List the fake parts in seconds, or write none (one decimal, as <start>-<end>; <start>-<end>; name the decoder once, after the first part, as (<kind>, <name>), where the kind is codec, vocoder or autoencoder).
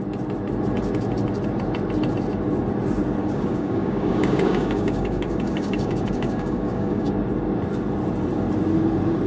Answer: 3.2-7.1 (codec, DAC)